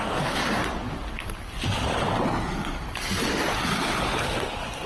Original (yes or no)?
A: yes